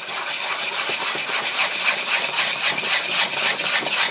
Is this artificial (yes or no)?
no